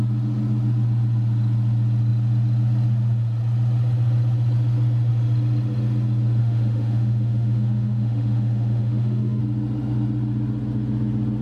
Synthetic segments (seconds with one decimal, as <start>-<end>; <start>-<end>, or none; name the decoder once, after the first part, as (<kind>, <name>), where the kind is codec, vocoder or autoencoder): 6.4-9.4 (autoencoder, DAC-VAE)